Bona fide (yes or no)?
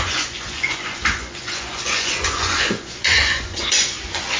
no